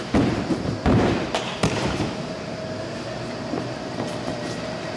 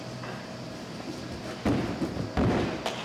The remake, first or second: first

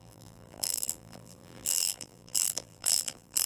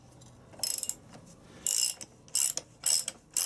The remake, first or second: first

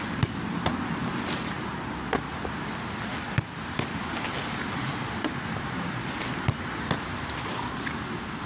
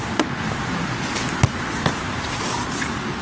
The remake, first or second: first